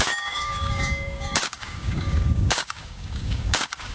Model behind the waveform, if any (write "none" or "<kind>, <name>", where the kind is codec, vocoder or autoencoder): codec, DAC